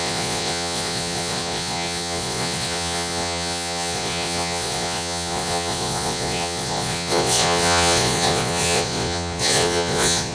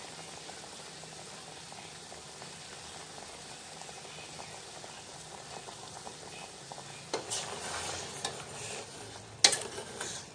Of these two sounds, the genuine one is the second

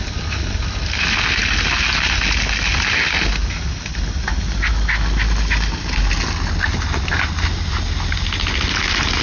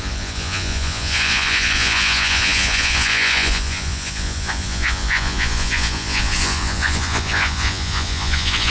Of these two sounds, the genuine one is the first